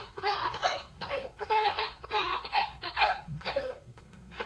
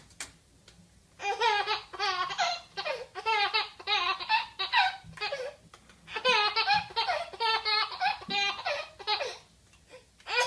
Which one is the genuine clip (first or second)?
second